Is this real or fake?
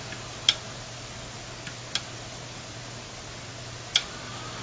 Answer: real